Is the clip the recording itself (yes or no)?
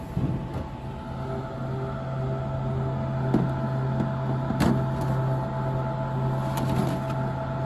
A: yes